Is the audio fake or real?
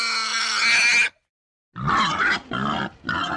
real